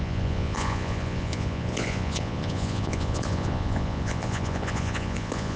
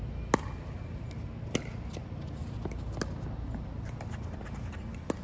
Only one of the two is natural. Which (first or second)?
second